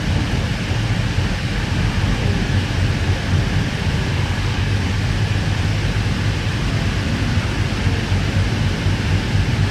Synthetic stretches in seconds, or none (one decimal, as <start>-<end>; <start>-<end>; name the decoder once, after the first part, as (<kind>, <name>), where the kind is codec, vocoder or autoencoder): 4.1-4.8 (codec, DAC)